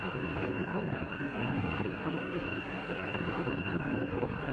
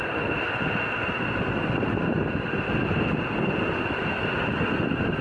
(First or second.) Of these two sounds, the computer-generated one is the first